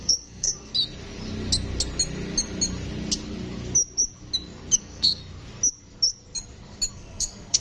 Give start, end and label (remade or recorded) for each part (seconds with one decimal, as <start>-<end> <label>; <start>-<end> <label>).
0.0-0.7 remade; 0.7-4.8 recorded; 4.8-5.2 remade; 5.2-6.9 recorded; 6.9-7.6 remade